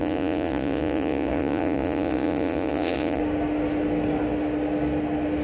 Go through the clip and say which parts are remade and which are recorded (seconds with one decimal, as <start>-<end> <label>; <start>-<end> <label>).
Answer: 0.0-3.2 remade; 3.2-5.4 recorded